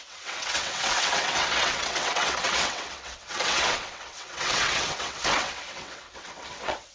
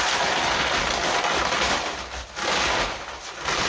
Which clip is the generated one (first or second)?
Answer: first